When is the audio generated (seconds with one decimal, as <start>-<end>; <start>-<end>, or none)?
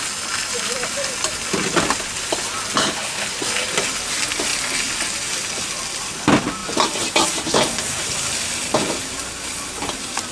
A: 2.8-3.4